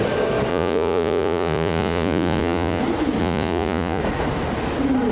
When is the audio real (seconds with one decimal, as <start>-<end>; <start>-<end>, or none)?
0.0-0.5; 2.8-3.2; 4.0-5.1